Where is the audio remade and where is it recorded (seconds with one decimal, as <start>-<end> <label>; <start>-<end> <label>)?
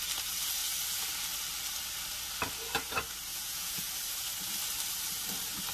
0.0-3.3 recorded; 3.3-3.9 remade; 3.9-5.7 recorded